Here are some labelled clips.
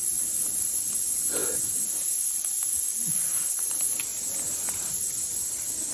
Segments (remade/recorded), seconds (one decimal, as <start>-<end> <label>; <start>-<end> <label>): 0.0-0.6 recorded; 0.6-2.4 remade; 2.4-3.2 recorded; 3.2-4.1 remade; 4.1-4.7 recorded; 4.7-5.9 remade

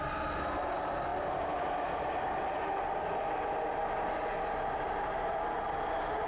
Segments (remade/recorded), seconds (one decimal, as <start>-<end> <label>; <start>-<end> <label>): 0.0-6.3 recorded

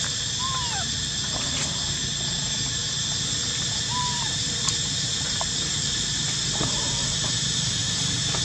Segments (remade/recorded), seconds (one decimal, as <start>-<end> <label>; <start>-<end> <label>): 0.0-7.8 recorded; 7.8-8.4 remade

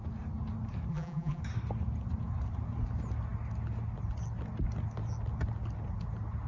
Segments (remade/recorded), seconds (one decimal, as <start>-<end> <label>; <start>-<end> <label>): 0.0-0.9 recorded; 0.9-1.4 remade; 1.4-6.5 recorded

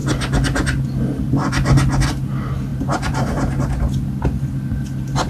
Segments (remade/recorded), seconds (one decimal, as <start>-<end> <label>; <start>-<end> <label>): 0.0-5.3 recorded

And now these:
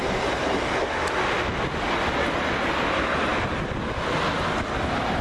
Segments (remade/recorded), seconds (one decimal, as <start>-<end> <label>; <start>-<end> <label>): 0.0-5.2 recorded

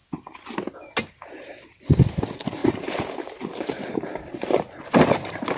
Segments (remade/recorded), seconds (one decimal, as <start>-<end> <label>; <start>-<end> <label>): 0.0-2.6 recorded; 2.6-4.9 remade; 4.9-5.6 recorded